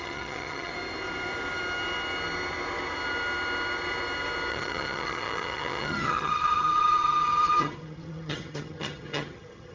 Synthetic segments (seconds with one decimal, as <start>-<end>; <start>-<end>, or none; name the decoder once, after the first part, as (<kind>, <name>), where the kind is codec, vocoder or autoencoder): 0.0-0.7 (vocoder, HiFi-GAN); 4.5-9.7